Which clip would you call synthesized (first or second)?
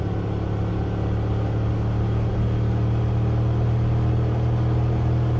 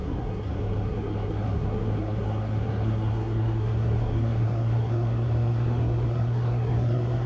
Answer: second